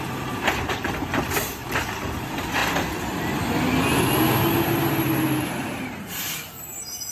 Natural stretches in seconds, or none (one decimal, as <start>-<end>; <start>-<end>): 2.6-5.5